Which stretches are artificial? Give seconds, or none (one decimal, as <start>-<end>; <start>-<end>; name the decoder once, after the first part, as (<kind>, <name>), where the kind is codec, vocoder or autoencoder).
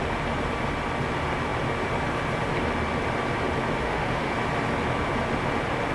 3.8-4.3 (autoencoder, DAC-VAE)